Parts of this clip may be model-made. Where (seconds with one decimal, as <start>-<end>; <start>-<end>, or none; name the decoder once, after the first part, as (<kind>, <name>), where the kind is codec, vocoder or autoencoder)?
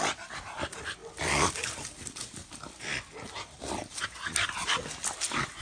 none